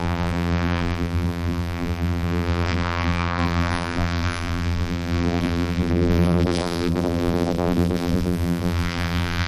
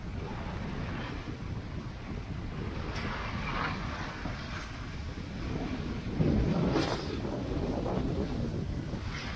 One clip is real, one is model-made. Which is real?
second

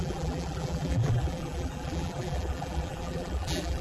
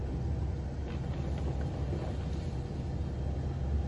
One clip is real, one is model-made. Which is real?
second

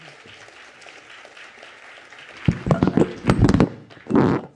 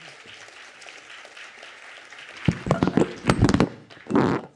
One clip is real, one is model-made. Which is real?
first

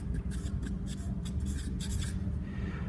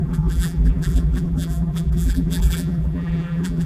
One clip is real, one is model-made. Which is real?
first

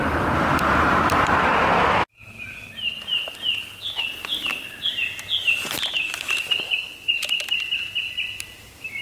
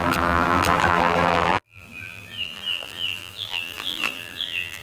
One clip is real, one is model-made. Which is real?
first